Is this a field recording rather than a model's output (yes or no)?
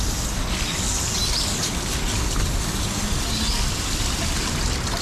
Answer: yes